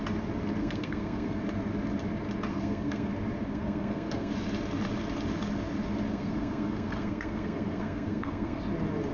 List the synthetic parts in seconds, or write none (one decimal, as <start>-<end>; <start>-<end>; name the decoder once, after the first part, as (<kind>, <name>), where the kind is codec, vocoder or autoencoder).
0.6-1.4 (codec, SNAC); 2.5-3.1; 3.5-4.3; 6.1-8.6